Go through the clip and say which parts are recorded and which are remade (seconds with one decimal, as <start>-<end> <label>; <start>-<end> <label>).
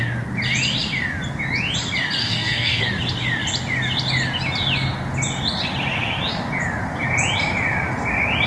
0.0-2.2 recorded; 2.2-2.8 remade; 2.8-8.5 recorded